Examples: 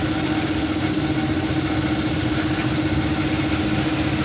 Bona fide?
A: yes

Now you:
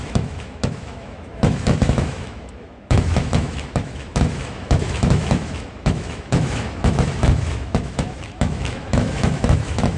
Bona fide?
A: no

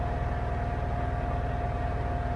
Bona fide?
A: yes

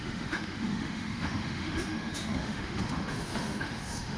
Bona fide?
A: no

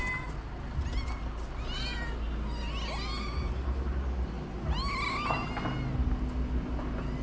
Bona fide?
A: yes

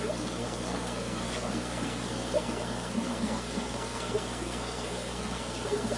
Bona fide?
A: no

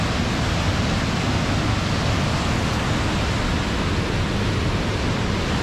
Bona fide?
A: yes